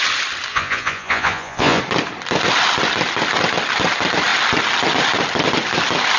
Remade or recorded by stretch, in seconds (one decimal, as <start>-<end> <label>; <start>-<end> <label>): 0.0-0.5 recorded; 0.5-1.8 remade; 1.8-6.2 recorded